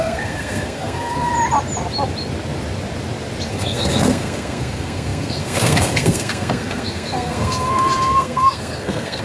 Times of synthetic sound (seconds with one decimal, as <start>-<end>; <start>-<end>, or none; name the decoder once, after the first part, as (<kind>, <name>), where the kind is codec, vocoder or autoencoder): 0.0-1.3 (codec, SNAC); 3.5-9.2